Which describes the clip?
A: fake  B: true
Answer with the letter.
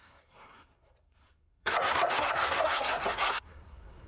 A